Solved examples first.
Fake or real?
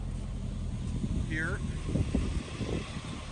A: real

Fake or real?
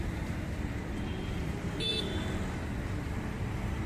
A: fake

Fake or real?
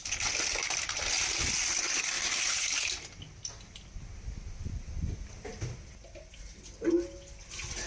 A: real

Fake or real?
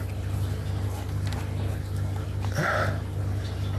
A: real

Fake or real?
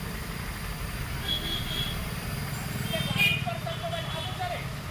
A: real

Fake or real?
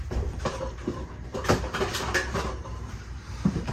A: fake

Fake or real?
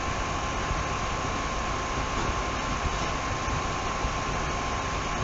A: real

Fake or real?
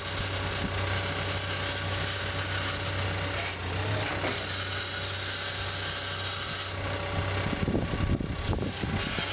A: real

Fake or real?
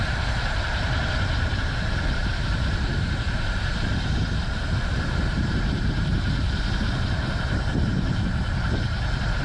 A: fake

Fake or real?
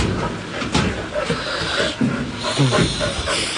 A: real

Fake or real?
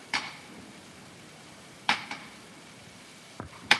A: fake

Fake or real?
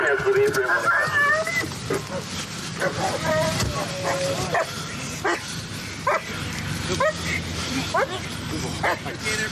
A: real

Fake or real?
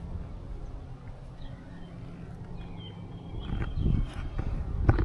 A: real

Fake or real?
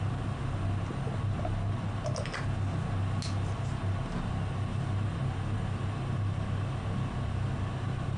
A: real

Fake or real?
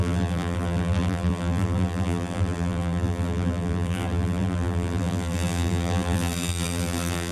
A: fake